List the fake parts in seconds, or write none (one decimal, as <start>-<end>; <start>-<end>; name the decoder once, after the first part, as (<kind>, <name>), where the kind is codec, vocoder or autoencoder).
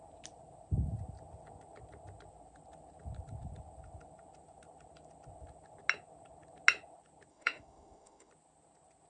7.3-8.3 (autoencoder, DAC-VAE)